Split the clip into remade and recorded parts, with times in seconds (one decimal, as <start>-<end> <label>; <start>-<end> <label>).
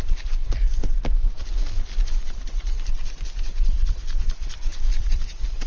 0.0-1.4 remade; 1.4-2.1 recorded; 2.1-5.7 remade